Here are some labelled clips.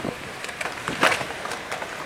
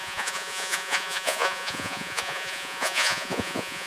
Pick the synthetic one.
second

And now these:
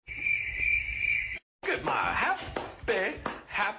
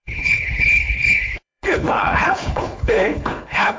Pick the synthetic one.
second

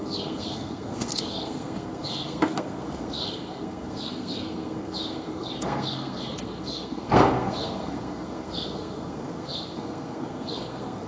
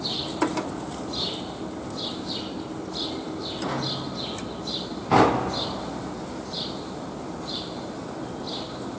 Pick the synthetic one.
first